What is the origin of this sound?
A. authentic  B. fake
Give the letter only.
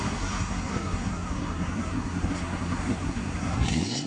B